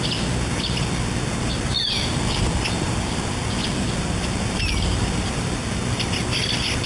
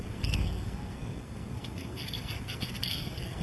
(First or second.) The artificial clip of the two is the second